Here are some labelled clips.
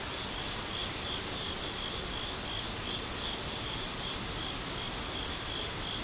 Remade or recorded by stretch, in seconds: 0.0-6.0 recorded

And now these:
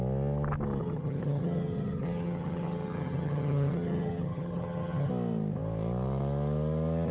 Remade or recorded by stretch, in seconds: 0.0-0.8 recorded; 0.8-5.1 remade; 5.1-7.1 recorded

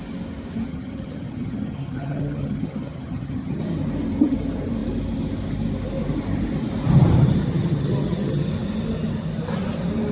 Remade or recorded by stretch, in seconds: 0.0-0.7 recorded; 0.7-3.6 remade; 3.6-7.4 recorded; 7.4-8.5 remade; 8.5-10.1 recorded

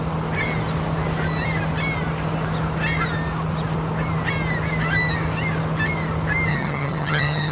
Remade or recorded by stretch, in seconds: 0.0-6.5 recorded; 6.5-7.5 remade